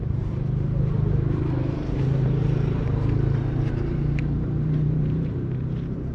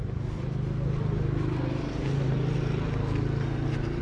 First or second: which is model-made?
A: first